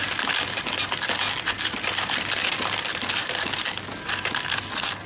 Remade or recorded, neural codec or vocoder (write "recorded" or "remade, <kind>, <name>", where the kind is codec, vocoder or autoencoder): recorded